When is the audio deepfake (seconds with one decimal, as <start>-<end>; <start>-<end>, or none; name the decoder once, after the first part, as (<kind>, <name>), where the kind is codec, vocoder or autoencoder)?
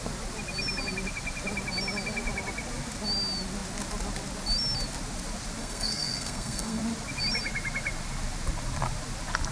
5.6-6.8 (codec, SNAC)